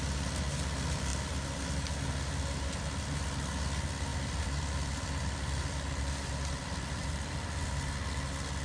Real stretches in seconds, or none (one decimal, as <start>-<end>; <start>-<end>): 0.0-4.1; 7.6-8.6